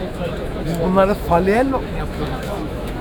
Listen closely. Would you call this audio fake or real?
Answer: fake